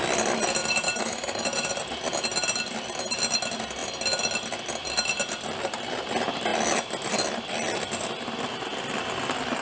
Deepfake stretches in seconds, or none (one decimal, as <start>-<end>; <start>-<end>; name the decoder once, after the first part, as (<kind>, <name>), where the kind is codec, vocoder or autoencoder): 0.6-1.9 (vocoder, BigVGAN v2)